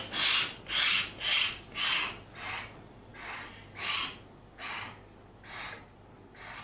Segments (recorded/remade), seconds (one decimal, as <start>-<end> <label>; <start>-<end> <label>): 0.0-6.6 recorded